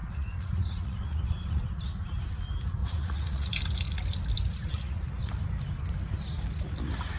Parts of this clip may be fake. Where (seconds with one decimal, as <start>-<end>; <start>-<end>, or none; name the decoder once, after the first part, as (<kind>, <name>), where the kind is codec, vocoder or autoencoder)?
0.0-1.8 (vocoder, Vocos); 2.8-3.6; 4.5-5.3